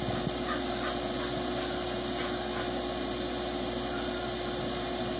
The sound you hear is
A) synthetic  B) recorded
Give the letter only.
B